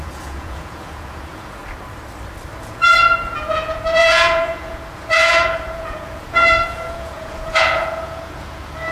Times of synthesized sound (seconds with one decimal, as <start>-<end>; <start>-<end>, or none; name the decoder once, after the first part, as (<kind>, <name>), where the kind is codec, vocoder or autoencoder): 0.0-1.6 (vocoder, Vocos); 2.6-8.9